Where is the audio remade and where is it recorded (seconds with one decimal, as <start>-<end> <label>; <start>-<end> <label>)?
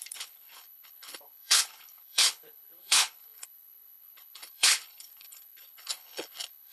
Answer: 0.0-6.7 remade